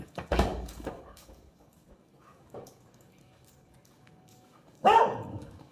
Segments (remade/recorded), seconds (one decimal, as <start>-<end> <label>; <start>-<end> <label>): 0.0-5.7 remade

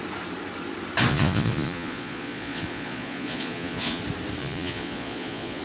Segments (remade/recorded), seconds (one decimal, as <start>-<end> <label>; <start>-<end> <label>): 0.0-1.1 recorded; 1.1-4.0 remade; 4.0-4.4 recorded; 4.4-5.6 remade

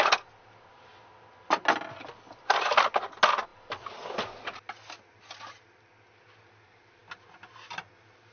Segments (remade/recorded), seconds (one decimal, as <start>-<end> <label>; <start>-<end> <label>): 0.0-8.3 recorded

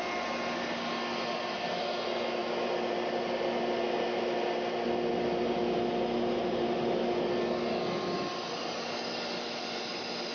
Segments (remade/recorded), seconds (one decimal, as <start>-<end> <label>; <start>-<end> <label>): 0.0-10.3 recorded

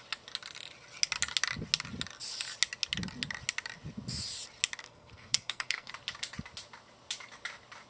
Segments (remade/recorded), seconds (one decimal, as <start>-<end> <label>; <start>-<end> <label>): 0.0-4.8 recorded; 4.8-5.9 remade; 5.9-7.9 recorded

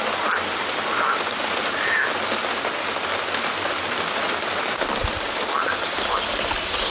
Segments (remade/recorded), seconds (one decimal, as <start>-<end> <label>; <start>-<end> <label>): 0.0-6.9 recorded